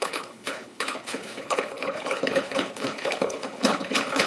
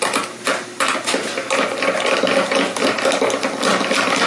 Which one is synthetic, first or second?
first